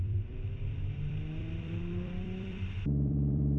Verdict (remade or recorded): remade